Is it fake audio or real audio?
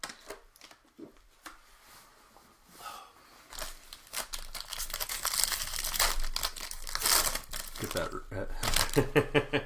real